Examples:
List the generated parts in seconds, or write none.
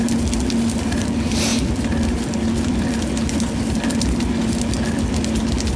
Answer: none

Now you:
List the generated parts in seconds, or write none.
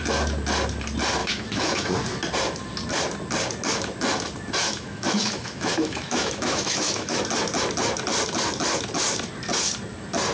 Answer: 1.2-1.9 (autoencoder, DAC-VAE); 4.6-7.2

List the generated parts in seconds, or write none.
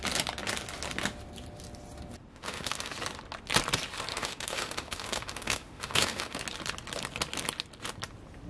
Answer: 2.3-2.9 (autoencoder, DAC-VAE); 4.1-6.4